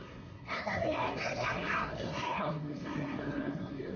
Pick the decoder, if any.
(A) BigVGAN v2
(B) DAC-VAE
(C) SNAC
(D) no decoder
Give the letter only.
C